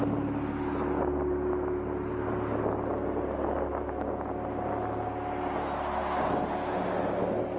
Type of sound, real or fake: real